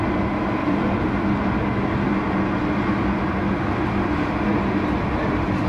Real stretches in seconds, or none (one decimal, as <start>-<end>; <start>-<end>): 0.0-0.6; 1.4-5.7